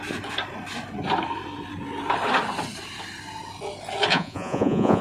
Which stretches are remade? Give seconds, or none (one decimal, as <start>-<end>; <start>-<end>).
4.1-5.0